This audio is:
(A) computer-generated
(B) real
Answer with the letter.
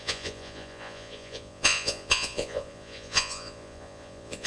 A